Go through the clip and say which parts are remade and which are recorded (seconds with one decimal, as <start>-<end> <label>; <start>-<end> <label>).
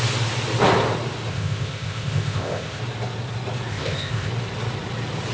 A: 0.0-1.3 recorded; 1.3-2.8 remade; 2.8-3.7 recorded; 3.7-4.3 remade; 4.3-5.3 recorded